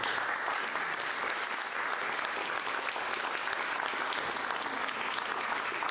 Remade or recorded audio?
recorded